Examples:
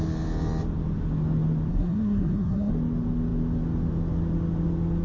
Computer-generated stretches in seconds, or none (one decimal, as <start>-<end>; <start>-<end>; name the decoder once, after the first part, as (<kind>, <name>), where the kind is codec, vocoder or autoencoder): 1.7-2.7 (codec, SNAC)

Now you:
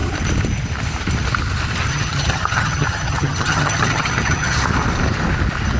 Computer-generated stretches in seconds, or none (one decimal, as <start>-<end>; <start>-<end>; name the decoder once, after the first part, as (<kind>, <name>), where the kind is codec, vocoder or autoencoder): 1.9-4.6 (vocoder, HiFi-GAN)

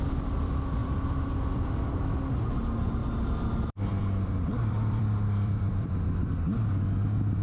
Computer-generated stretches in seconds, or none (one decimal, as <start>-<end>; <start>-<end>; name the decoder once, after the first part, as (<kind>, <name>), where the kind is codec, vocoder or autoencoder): 0.8-2.0 (vocoder, BigVGAN v2); 3.0-6.3

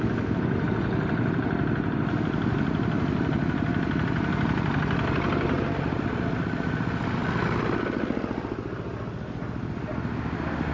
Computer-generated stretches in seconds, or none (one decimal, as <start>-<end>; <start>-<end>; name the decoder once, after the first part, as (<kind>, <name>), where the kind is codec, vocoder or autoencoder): none